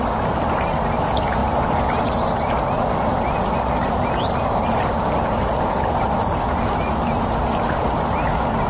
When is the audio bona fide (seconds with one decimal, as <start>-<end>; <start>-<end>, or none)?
0.0-3.8; 8.0-8.7